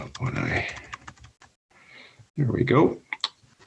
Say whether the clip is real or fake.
real